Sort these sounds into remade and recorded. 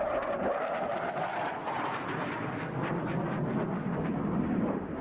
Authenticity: recorded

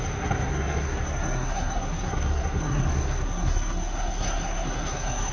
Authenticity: remade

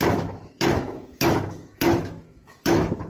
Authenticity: remade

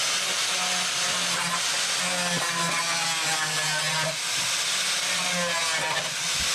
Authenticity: recorded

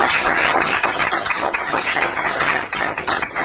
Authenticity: remade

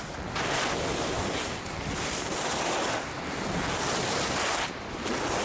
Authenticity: recorded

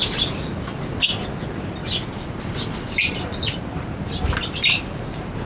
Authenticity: recorded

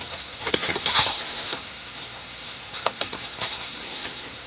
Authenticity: remade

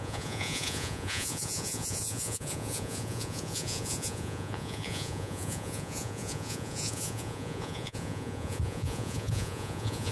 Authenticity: remade